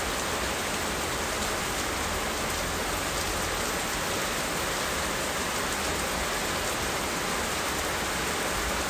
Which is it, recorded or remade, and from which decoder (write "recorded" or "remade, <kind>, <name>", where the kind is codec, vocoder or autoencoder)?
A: recorded